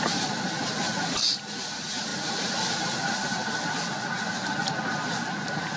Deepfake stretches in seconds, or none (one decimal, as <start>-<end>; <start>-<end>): none